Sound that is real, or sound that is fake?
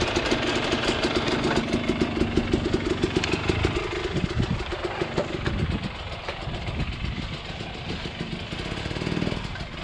real